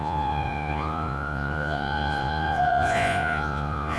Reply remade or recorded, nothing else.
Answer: remade